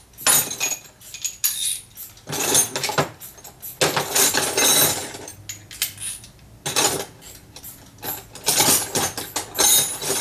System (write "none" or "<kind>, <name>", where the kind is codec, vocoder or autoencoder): none